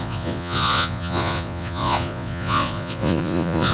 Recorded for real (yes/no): no